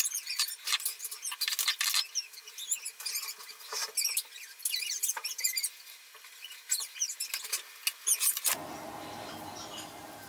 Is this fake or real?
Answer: real